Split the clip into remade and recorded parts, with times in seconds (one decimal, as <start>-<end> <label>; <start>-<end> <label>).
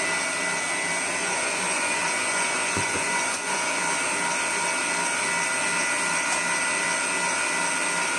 0.0-1.2 recorded; 1.2-3.7 remade; 3.7-8.2 recorded